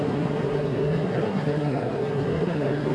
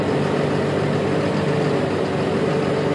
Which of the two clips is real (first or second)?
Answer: second